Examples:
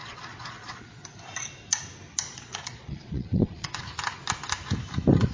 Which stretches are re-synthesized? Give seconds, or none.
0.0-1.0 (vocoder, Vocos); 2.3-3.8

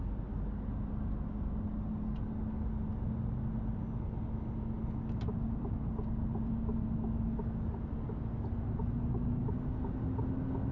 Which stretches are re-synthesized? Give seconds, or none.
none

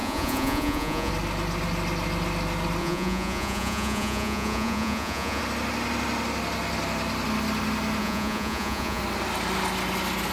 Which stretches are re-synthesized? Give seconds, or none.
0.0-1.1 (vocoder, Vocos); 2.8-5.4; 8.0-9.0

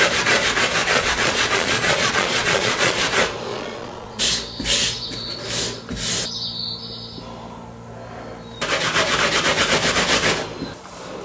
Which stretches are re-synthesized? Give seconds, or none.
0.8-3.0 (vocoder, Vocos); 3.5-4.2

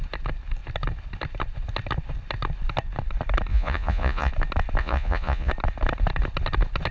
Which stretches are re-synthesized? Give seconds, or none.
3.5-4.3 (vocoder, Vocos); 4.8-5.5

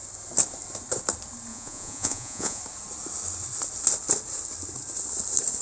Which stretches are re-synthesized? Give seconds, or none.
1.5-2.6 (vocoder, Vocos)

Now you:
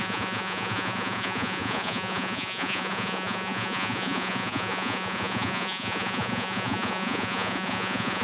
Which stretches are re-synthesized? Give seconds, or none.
0.0-8.2 (vocoder, Vocos)

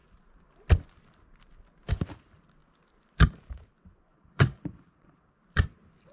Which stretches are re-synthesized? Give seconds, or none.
4.1-5.3 (vocoder, Vocos)